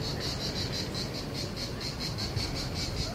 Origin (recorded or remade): recorded